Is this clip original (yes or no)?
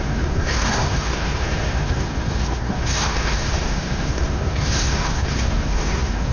no